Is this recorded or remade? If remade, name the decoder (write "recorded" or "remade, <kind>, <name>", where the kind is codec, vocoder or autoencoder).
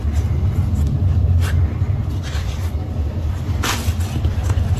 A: recorded